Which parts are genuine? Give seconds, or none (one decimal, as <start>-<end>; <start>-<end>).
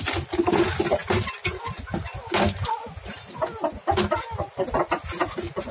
0.0-1.0; 2.7-5.7